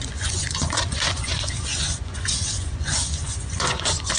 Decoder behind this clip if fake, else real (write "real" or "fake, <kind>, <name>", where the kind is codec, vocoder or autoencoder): fake, vocoder, Vocos